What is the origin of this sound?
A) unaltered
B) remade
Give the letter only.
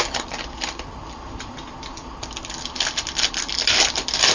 A